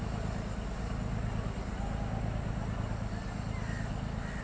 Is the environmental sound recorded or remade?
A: recorded